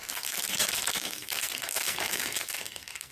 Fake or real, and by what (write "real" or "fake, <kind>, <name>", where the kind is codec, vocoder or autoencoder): fake, codec, SNAC